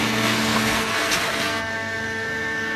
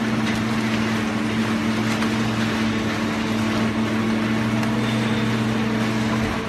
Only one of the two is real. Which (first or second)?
second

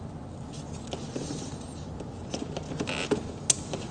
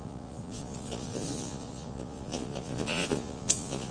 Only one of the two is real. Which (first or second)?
first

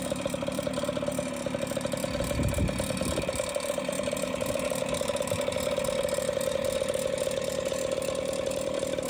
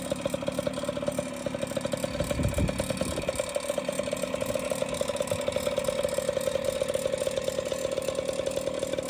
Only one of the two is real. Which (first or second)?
second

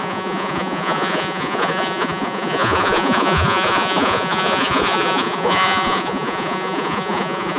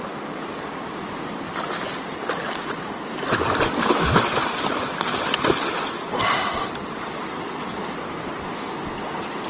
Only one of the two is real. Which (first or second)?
second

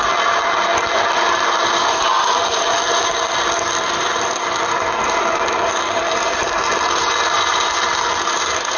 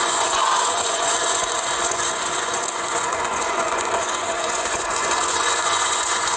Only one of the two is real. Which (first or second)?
first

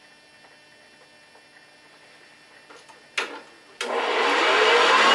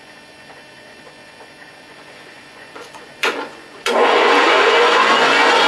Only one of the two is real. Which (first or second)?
first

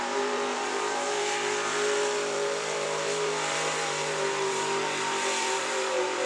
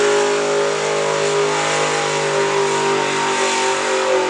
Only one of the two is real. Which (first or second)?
second